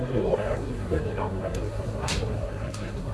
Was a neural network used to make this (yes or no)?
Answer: yes